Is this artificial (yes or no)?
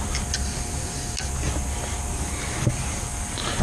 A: no